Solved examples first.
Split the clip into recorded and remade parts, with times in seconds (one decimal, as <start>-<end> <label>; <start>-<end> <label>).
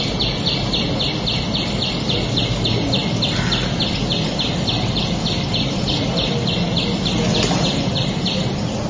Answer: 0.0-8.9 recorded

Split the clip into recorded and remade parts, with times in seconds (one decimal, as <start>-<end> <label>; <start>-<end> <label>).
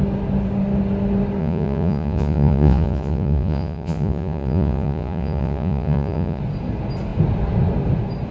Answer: 0.0-1.4 recorded; 1.4-6.4 remade; 6.4-8.3 recorded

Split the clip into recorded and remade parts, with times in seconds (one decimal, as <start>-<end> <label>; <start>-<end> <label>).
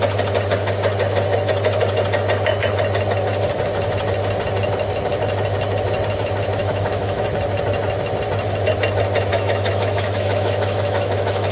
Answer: 0.0-6.6 recorded; 6.6-7.2 remade; 7.2-9.3 recorded; 9.3-11.5 remade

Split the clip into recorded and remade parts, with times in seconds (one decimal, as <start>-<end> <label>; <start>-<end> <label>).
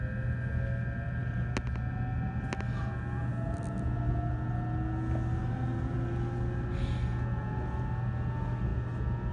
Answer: 0.0-9.3 recorded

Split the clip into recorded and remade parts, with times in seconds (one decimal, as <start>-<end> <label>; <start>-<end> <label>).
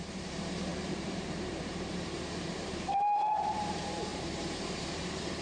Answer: 0.0-5.4 remade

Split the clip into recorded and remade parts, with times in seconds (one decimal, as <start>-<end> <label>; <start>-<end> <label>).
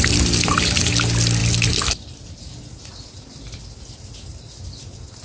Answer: 0.0-5.2 recorded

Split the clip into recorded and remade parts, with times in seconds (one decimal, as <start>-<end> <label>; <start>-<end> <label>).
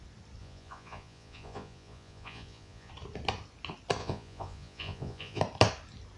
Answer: 0.0-0.4 recorded; 0.4-2.9 remade; 2.9-4.0 recorded; 4.0-5.4 remade; 5.4-6.2 recorded